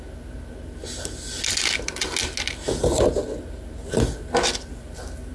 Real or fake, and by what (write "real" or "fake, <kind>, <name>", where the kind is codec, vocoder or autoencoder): real